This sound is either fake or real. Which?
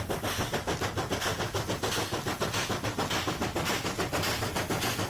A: real